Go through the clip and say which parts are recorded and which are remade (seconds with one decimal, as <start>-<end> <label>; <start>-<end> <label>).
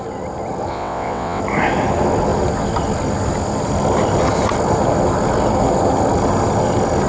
0.0-0.7 recorded; 0.7-1.4 remade; 1.4-7.1 recorded